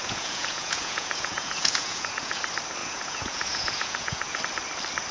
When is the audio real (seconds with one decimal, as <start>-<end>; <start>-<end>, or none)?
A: 2.4-2.8; 4.4-5.1